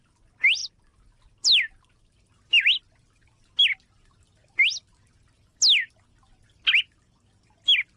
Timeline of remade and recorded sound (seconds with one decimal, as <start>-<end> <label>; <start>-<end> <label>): 0.0-8.0 recorded